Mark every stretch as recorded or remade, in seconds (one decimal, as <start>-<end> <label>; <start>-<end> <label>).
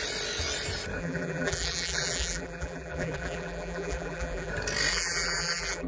0.0-1.0 recorded; 1.0-4.5 remade; 4.5-4.9 recorded; 4.9-5.9 remade